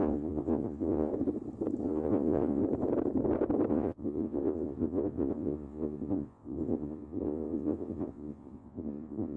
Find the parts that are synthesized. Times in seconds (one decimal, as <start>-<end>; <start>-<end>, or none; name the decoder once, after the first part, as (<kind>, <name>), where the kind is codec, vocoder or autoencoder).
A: 0.0-1.1 (vocoder, Vocos); 1.8-2.6; 3.7-9.4